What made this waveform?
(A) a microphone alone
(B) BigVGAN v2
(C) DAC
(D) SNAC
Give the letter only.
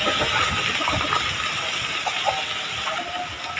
A